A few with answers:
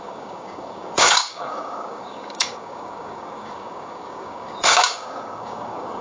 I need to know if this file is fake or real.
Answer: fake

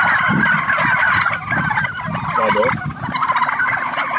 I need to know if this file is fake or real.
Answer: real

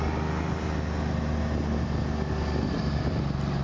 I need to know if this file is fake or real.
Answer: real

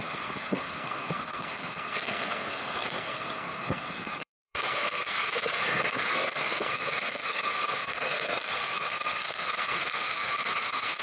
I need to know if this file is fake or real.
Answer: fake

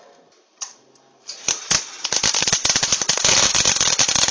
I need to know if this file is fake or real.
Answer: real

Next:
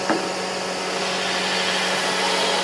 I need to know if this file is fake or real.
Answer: real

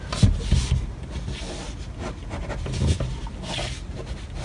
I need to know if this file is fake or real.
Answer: real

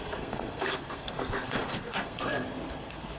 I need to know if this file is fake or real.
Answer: fake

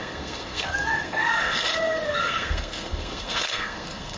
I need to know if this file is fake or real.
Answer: fake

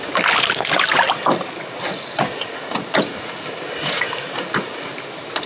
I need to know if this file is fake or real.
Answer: real